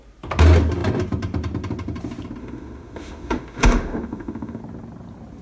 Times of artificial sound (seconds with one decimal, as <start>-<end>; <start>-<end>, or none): 2.4-4.6